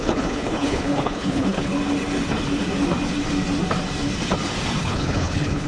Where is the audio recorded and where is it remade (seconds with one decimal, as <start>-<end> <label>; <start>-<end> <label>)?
0.0-1.7 remade; 1.7-4.8 recorded; 4.8-5.7 remade